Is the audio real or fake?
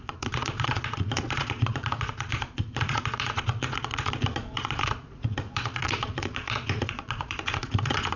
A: fake